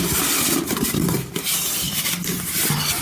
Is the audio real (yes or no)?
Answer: yes